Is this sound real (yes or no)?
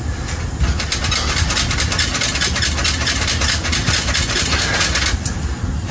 yes